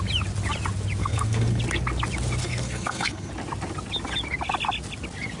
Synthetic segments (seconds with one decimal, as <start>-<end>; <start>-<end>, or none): 1.0-1.6; 2.4-3.3